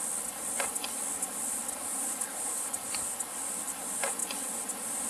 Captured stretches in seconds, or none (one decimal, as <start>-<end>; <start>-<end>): 0.0-1.9; 3.1-5.1